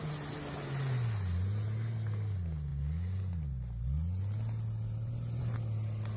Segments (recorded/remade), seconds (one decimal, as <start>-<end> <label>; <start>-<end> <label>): 0.0-6.2 recorded